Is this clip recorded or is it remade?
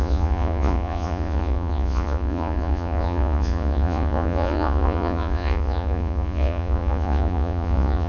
remade